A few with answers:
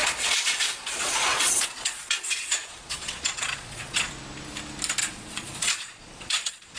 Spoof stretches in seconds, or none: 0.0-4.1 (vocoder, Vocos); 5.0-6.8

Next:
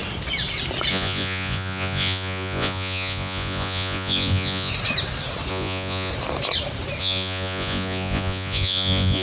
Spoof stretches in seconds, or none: 0.9-4.7 (vocoder, Vocos); 5.5-6.1; 7.0-9.2

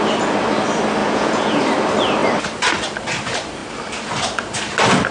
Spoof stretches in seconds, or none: 1.0-1.6 (vocoder, Vocos)